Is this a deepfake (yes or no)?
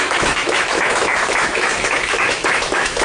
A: yes